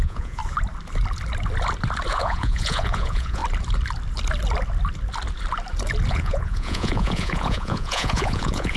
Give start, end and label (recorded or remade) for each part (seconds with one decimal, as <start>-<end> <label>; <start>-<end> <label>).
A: 0.0-0.4 remade; 0.4-2.1 recorded; 2.1-3.4 remade; 3.4-6.1 recorded; 6.1-8.8 remade